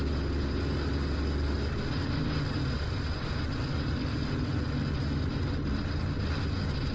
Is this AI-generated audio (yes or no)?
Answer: no